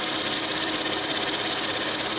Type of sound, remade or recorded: recorded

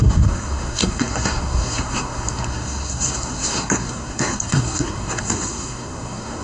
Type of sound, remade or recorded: remade